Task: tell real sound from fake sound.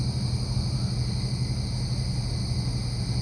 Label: real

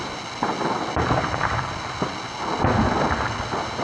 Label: real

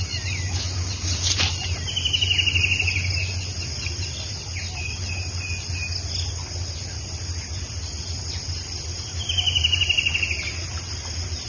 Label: real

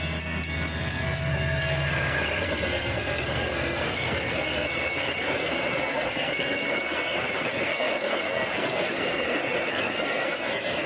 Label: fake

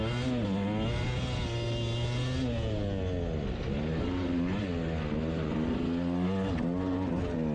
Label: real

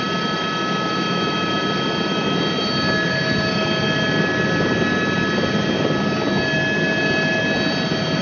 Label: real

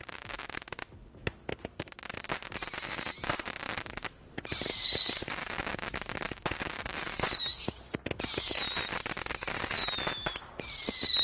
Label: real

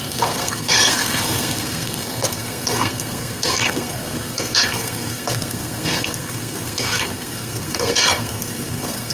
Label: fake